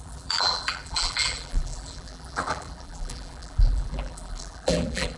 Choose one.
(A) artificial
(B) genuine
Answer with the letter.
A